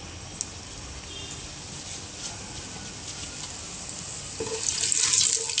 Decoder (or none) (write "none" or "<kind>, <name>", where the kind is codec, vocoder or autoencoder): none